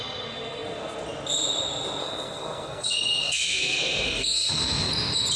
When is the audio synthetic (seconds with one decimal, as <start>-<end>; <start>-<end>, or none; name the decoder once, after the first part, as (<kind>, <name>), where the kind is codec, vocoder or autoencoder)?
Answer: 2.0-4.9 (codec, SNAC)